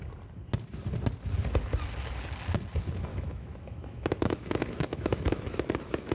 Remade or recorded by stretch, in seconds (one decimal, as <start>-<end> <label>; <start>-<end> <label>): 0.0-3.1 recorded; 3.1-6.1 remade